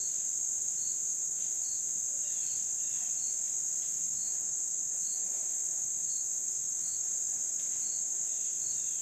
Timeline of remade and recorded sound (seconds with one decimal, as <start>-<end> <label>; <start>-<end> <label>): 0.0-1.1 recorded; 1.1-1.8 remade; 1.8-3.9 recorded; 3.9-7.1 remade; 7.1-7.9 recorded; 7.9-8.5 remade; 8.5-9.0 recorded

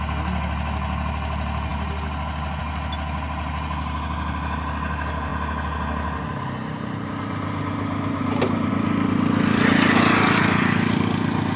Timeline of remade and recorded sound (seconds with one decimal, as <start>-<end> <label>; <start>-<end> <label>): 0.0-11.6 recorded

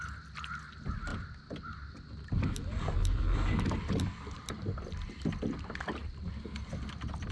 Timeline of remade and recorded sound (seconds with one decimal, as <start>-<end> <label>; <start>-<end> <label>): 0.0-7.3 recorded

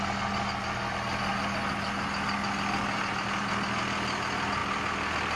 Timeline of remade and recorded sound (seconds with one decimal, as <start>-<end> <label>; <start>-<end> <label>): 0.0-5.4 recorded

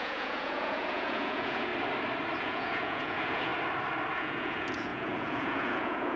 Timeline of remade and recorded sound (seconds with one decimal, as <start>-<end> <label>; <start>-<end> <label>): 0.0-1.7 remade; 1.7-2.4 recorded; 2.4-3.5 remade; 3.5-4.1 recorded; 4.1-6.2 remade